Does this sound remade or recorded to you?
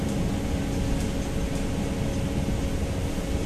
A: recorded